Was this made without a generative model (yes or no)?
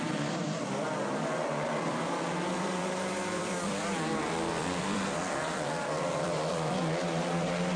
no